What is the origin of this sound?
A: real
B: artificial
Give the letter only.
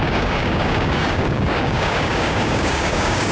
B